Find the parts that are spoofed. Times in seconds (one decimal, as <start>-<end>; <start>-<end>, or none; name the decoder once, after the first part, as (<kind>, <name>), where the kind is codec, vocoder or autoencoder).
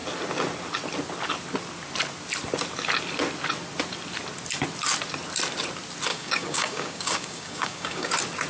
6.1-8.1 (codec, DAC)